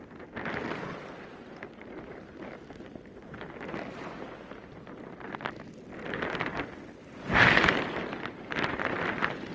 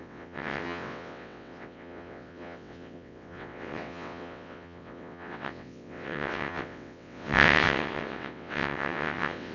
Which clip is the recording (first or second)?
first